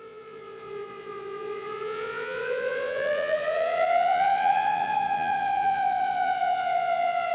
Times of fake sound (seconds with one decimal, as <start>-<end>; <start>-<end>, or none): 0.0-7.3